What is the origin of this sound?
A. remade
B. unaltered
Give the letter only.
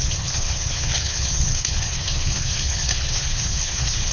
A